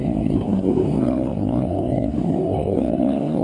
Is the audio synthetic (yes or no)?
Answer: yes